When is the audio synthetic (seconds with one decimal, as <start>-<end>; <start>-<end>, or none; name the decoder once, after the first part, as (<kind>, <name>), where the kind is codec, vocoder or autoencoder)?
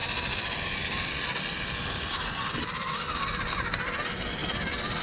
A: none